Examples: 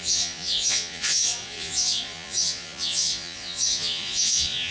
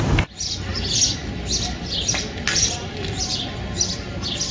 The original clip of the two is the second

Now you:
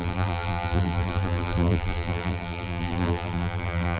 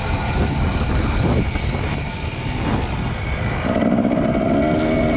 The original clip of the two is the second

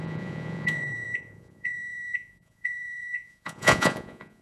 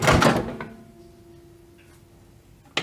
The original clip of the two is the second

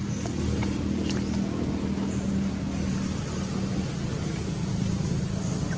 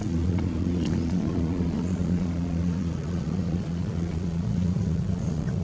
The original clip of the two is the first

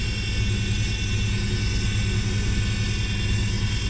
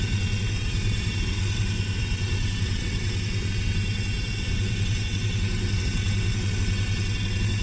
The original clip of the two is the first